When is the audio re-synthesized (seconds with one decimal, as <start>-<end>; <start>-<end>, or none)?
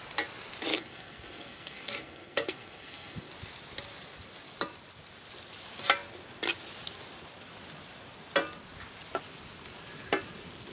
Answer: 0.7-3.3